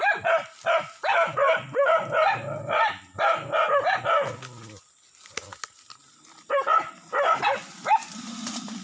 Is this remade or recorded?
recorded